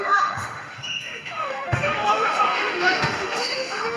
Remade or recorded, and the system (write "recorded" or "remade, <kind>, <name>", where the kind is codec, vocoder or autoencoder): remade, autoencoder, DAC-VAE